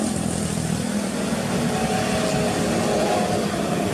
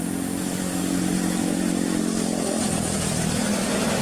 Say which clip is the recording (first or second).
first